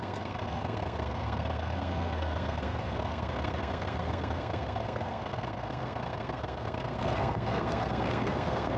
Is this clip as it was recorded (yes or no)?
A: no